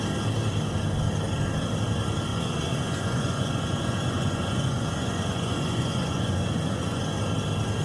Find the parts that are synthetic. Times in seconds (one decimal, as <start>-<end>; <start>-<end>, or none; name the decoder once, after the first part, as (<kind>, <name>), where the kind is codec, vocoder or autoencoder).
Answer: 2.3-7.0 (vocoder, Vocos)